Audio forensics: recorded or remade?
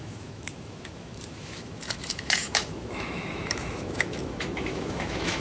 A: remade